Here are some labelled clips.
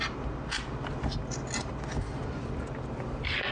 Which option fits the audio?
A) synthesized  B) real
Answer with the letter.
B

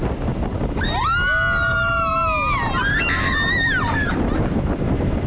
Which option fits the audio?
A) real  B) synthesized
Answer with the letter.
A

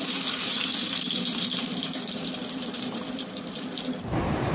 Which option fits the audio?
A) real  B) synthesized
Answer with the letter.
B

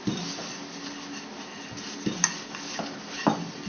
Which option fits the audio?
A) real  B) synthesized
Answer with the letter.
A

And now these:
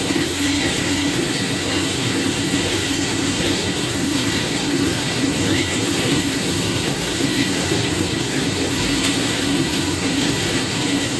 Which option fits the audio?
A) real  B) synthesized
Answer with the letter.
B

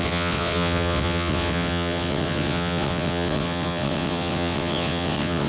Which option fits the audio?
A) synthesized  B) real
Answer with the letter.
A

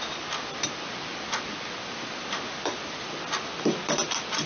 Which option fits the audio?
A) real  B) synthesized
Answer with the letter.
A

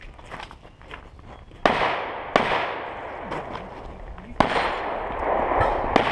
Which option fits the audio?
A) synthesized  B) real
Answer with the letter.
B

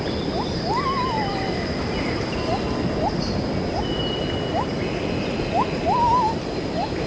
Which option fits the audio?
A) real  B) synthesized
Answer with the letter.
A